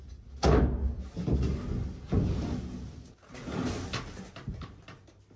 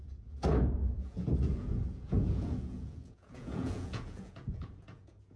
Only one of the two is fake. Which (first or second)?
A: second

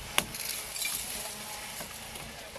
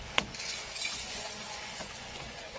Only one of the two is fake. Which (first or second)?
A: second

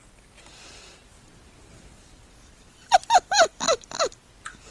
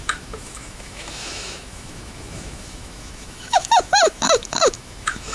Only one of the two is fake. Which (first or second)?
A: second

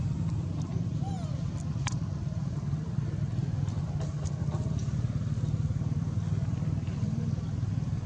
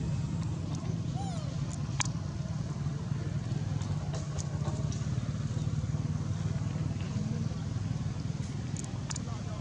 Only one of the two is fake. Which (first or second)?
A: first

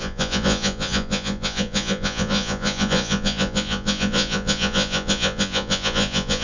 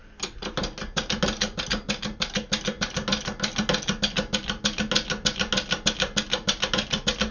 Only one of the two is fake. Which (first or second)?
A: first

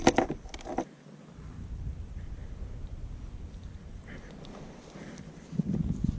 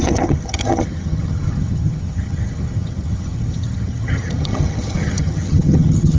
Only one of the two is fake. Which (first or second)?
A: second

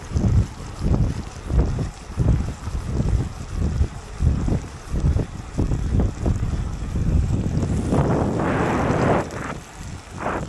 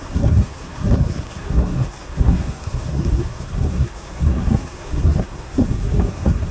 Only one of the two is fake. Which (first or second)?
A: second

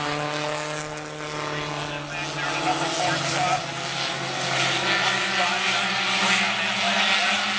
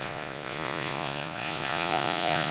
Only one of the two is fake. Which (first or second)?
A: second